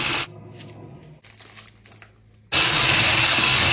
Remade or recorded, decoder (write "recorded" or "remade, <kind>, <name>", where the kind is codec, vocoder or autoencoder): recorded